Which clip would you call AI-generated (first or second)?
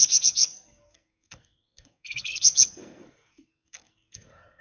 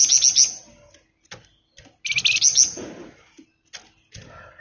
first